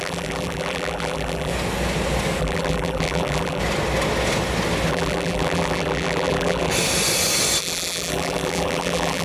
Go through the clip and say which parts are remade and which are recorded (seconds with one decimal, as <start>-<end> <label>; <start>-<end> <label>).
0.0-1.5 remade; 1.5-2.4 recorded; 2.4-3.6 remade; 3.6-4.9 recorded; 4.9-6.7 remade; 6.7-7.6 recorded; 7.6-9.2 remade